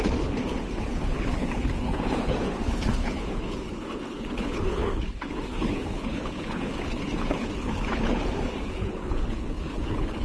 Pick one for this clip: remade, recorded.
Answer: remade